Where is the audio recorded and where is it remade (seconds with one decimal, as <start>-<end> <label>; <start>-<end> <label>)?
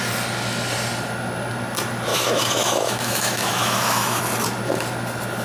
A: 0.0-2.1 recorded; 2.1-4.2 remade; 4.2-5.4 recorded